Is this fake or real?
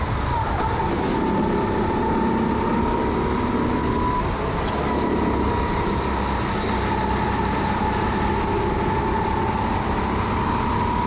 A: real